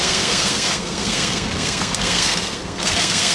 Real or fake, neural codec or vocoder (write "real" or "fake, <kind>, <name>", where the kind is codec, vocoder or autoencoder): fake, codec, SNAC